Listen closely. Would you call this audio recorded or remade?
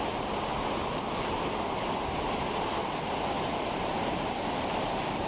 recorded